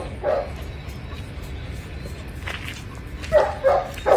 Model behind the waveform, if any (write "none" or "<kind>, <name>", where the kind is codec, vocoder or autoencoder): none